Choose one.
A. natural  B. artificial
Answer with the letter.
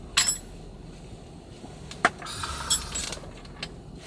A